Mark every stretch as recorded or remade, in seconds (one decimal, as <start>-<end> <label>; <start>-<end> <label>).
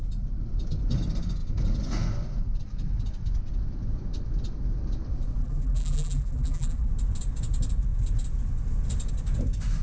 0.0-5.4 recorded; 5.4-6.9 remade; 6.9-9.8 recorded